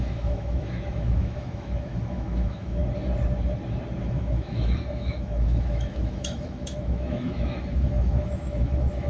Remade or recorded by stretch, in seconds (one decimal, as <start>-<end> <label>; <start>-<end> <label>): 0.0-2.8 remade; 2.8-4.0 recorded; 4.0-9.1 remade